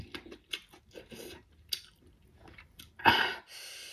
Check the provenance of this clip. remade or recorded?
recorded